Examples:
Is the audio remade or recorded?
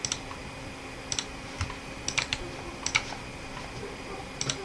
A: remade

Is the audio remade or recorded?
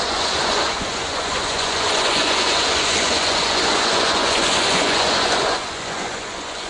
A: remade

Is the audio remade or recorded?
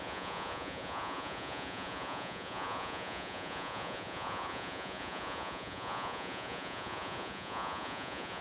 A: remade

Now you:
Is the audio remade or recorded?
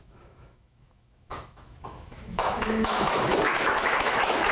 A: remade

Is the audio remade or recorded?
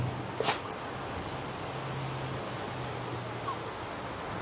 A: recorded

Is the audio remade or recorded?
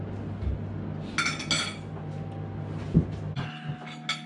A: recorded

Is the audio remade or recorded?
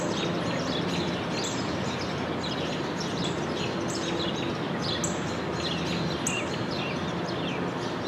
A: recorded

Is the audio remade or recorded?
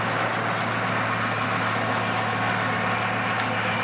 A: recorded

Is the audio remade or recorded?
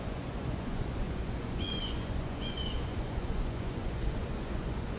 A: remade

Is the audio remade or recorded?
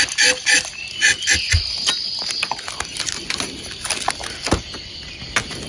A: recorded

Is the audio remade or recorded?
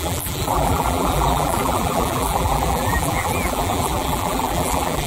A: remade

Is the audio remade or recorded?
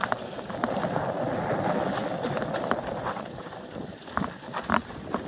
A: recorded